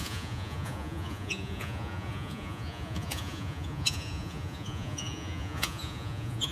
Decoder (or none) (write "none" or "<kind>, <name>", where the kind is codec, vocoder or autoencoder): vocoder, Vocos